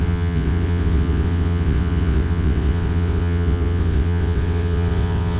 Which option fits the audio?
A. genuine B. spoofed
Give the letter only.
B